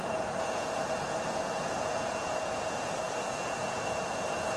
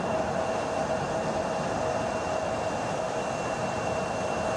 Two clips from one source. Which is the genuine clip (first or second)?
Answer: second